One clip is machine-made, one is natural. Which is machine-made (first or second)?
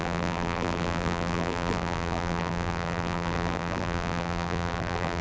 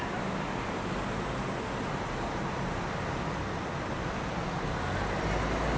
first